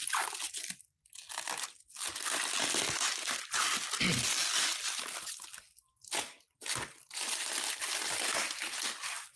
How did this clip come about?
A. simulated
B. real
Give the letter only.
B